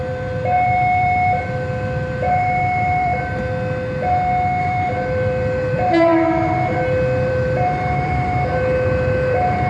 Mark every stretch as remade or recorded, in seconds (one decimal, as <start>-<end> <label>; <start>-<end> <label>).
0.0-3.1 remade; 3.1-4.6 recorded; 4.6-6.1 remade; 6.1-7.3 recorded; 7.3-9.7 remade